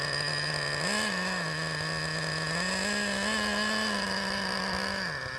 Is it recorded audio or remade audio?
recorded